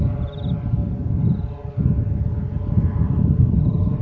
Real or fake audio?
real